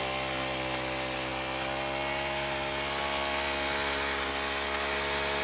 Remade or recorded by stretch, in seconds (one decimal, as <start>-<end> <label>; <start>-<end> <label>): 0.0-5.4 recorded